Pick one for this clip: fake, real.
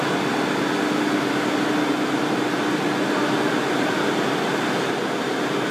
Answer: real